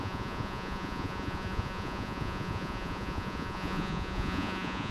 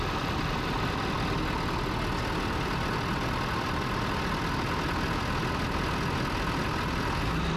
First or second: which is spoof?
first